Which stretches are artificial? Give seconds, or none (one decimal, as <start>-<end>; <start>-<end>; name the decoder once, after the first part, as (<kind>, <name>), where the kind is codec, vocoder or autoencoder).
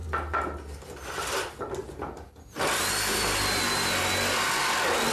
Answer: none